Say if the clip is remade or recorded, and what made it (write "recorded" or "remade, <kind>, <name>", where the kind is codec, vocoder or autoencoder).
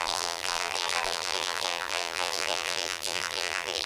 remade, vocoder, BigVGAN v2